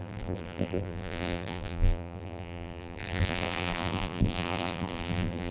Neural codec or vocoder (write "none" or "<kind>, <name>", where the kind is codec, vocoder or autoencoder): vocoder, BigVGAN v2